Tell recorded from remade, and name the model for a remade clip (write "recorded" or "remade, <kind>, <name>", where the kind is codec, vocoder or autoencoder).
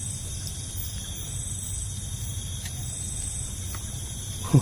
remade, vocoder, BigVGAN v2